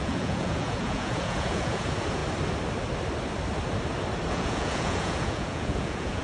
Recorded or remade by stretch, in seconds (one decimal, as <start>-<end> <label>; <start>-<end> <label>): 0.0-2.2 remade; 2.2-4.3 recorded; 4.3-6.2 remade